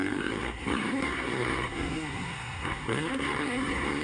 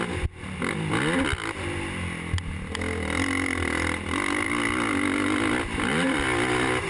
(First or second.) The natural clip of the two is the second